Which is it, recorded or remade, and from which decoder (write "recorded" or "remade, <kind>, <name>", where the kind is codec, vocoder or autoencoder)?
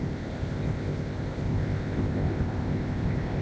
remade, codec, ZipCodec